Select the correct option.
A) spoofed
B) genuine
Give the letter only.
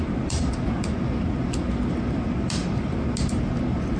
B